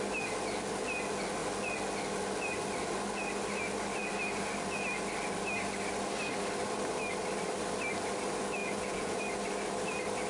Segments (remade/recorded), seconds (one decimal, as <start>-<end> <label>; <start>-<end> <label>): 0.0-8.6 recorded; 8.6-9.2 remade; 9.2-10.3 recorded